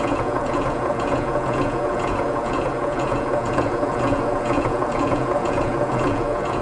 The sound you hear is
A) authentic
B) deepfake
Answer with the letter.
B